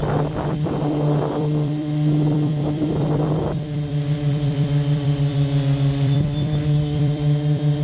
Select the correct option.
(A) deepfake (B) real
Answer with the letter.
A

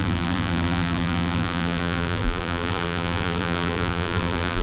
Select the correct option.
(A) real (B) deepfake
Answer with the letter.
B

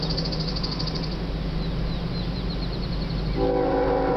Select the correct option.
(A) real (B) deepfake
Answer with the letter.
A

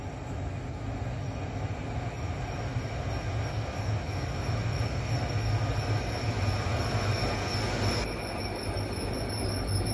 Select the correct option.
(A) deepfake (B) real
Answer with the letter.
B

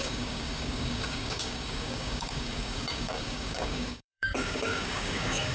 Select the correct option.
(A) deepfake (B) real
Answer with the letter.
A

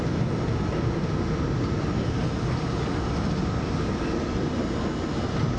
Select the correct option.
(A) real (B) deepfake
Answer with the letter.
A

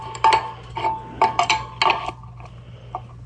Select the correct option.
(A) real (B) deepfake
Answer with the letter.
A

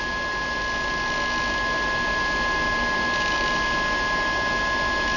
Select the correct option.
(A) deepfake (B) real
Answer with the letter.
B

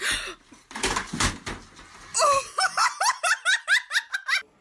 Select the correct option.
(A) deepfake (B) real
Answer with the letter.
B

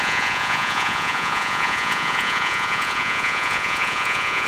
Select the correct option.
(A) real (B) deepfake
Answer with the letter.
B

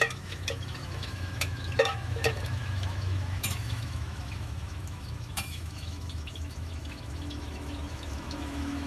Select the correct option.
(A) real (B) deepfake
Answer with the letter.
B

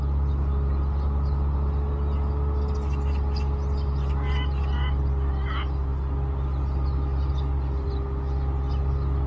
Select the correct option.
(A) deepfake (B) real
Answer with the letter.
B